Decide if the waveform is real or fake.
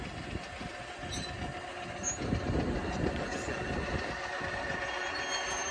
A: real